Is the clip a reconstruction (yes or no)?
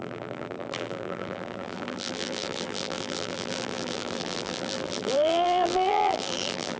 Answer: yes